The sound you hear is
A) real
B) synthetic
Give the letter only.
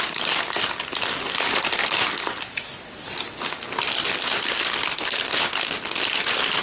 A